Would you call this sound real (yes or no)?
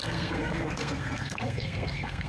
no